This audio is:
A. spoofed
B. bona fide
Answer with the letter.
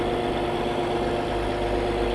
B